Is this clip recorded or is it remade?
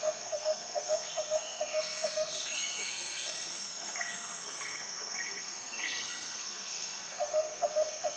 remade